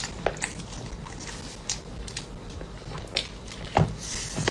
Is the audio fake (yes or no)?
no